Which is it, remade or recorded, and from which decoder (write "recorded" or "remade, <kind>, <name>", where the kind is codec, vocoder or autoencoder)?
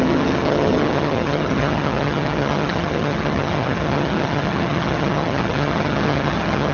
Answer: remade, vocoder, HiFi-GAN